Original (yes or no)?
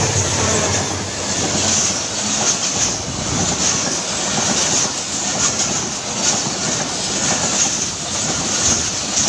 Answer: yes